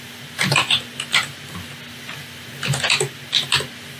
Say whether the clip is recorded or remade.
recorded